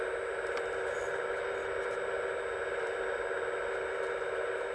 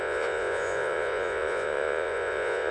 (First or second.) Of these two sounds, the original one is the first